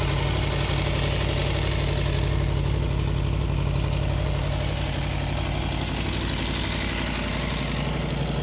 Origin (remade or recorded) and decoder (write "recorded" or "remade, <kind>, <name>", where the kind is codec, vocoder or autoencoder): recorded